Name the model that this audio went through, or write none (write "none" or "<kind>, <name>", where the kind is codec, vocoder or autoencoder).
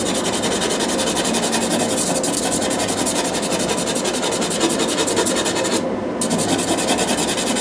none